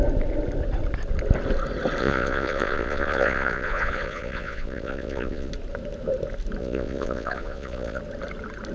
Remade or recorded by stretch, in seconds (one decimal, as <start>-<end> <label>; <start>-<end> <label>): 0.0-2.0 recorded; 2.0-5.5 remade; 5.5-6.6 recorded; 6.6-8.0 remade; 8.0-8.7 recorded